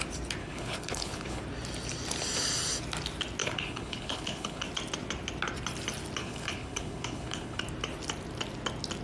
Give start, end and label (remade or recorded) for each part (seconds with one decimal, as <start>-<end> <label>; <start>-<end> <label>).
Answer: 0.0-0.4 recorded; 0.4-1.4 remade; 1.4-3.4 recorded; 3.4-4.7 remade; 4.7-6.2 recorded; 6.2-7.6 remade; 7.6-9.0 recorded